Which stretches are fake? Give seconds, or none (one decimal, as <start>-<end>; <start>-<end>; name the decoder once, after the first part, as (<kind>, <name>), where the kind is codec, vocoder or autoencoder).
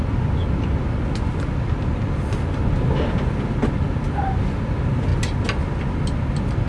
none